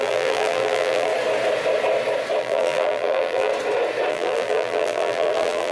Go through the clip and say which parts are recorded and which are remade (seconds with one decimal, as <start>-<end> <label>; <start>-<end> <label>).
0.0-1.1 remade; 1.1-2.4 recorded; 2.4-3.5 remade; 3.5-4.1 recorded; 4.1-5.7 remade